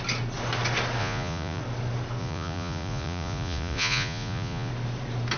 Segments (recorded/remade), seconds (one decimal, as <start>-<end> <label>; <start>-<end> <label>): 0.0-1.0 recorded; 1.0-1.6 remade; 1.6-2.2 recorded; 2.2-4.7 remade; 4.7-5.4 recorded